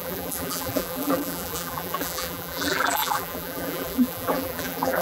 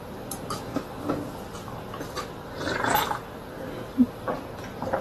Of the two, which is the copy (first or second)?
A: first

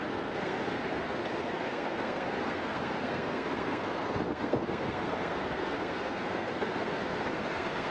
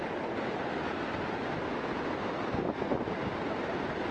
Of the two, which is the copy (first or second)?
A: first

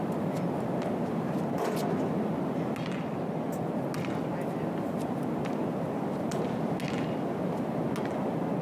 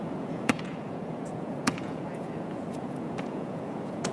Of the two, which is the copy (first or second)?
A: second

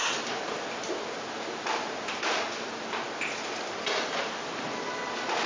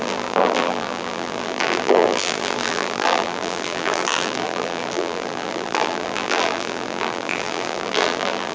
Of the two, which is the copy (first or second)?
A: second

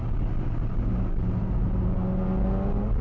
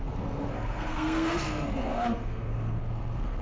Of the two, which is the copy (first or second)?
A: second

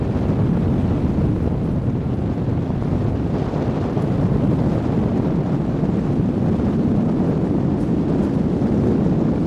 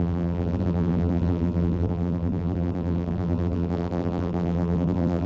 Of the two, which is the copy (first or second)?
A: second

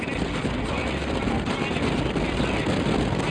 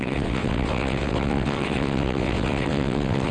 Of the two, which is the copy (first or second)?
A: second